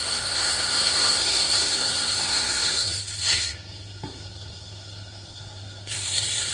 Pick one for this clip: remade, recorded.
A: remade